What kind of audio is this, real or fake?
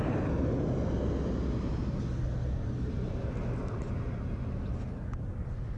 real